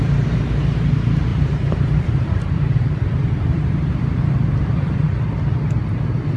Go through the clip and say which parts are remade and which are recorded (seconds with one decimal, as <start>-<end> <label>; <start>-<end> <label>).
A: 0.0-1.3 recorded; 1.3-5.1 remade; 5.1-6.4 recorded